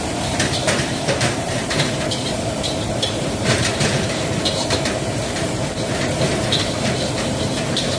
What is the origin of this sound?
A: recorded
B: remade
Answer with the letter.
B